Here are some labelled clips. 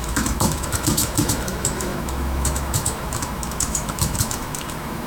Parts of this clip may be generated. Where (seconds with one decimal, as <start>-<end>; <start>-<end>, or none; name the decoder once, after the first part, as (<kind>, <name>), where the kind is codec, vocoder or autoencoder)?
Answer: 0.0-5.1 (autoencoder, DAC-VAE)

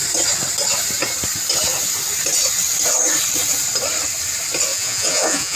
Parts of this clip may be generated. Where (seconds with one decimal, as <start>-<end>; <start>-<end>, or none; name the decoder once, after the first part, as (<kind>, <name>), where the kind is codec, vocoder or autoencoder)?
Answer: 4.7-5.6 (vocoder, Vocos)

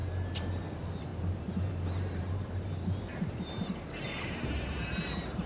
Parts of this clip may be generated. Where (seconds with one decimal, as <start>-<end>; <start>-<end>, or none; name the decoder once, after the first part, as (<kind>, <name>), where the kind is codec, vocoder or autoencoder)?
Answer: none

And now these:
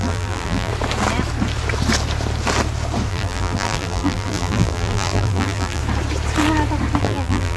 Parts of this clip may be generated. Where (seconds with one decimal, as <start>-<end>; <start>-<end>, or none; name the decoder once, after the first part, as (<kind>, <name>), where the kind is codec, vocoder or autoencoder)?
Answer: 0.0-0.7 (vocoder, BigVGAN v2); 3.1-5.8; 7.0-7.6

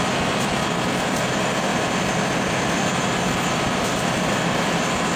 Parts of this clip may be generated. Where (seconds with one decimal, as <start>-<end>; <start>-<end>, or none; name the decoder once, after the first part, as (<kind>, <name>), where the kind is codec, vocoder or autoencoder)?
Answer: none

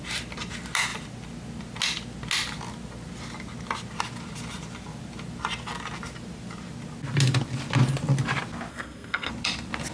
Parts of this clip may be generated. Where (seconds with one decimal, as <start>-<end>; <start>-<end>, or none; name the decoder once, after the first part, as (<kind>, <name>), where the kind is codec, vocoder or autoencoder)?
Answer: 8.7-9.3 (codec, SNAC)